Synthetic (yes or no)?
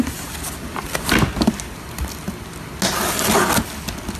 no